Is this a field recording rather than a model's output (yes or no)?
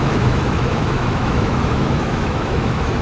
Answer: no